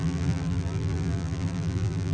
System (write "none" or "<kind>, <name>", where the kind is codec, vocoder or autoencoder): vocoder, BigVGAN v2